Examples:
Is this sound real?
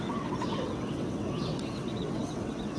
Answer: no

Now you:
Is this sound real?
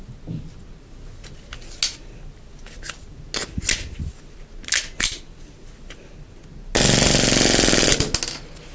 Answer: yes